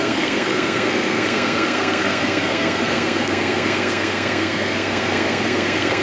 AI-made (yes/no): yes